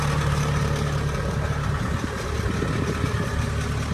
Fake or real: fake